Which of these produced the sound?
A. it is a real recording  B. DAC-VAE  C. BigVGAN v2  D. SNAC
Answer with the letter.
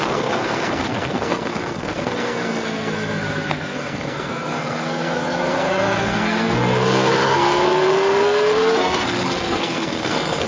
D